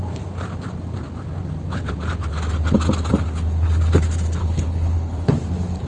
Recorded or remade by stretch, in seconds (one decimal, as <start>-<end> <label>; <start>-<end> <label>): 0.0-4.4 recorded; 4.4-5.3 remade; 5.3-5.9 recorded